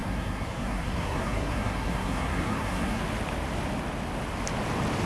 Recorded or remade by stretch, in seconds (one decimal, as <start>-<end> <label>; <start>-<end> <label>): 0.0-3.0 remade; 3.0-5.1 recorded